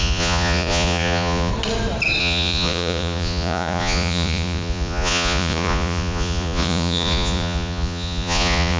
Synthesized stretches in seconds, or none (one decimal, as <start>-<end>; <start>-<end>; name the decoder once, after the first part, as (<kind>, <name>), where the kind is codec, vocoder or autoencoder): 0.0-1.5 (vocoder, Vocos); 2.2-8.8